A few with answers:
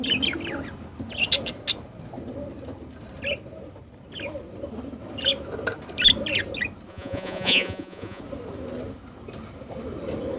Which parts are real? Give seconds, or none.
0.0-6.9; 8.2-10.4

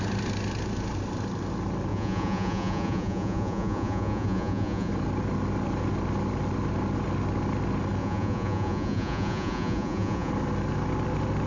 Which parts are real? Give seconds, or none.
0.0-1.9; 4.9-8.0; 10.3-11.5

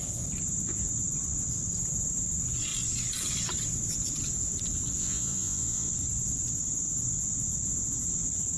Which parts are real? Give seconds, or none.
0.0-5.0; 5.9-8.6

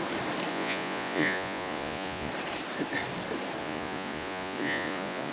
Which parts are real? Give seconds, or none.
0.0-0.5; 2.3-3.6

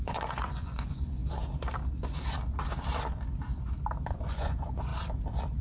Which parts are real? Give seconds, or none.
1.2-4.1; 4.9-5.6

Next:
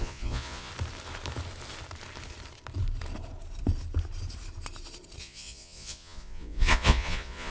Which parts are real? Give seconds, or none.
0.7-5.2